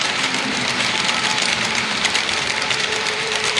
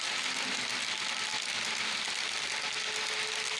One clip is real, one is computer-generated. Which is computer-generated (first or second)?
first